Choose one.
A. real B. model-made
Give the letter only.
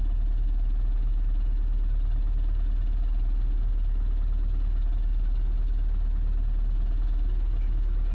A